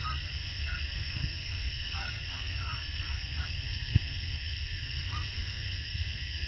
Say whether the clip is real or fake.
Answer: fake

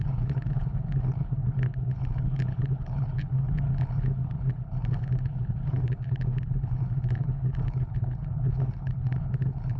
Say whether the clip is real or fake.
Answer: fake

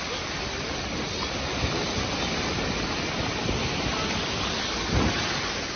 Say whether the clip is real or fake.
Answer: real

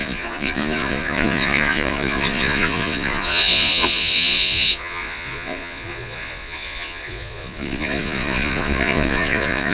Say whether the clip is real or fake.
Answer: fake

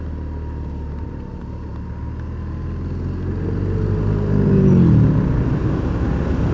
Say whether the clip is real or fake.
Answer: real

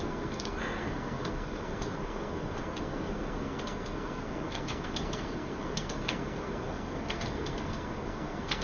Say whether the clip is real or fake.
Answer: fake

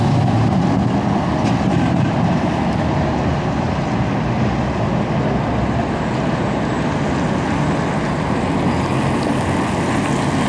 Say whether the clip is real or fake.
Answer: real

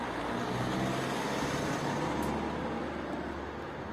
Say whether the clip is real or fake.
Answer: real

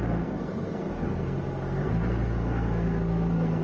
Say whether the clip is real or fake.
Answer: fake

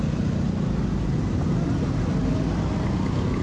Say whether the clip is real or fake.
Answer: real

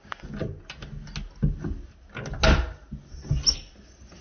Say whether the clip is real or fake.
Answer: real